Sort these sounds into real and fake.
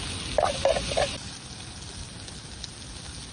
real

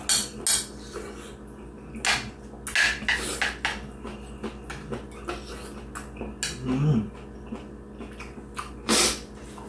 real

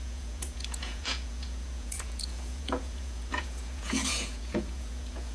fake